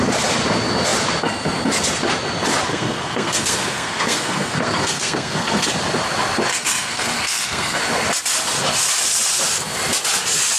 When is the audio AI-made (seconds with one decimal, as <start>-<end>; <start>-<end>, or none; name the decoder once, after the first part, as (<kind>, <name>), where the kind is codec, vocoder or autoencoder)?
2.7-5.7 (codec, SNAC); 6.5-7.8